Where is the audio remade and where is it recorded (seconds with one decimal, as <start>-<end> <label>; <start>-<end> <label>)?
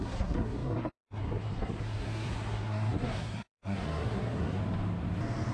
0.0-4.6 remade; 4.6-5.5 recorded